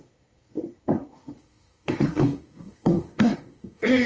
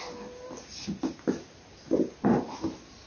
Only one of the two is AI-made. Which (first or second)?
first